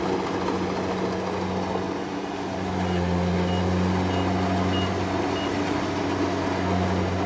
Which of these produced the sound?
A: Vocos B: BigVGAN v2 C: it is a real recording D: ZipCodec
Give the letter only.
C